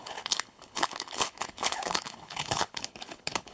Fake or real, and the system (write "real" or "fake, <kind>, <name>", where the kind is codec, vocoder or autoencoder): fake, codec, HILCodec